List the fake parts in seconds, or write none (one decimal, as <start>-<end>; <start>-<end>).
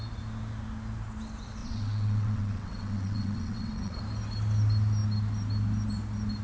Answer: 1.6-4.0